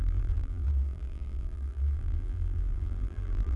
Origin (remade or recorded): remade